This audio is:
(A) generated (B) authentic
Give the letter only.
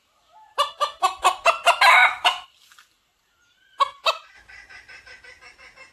B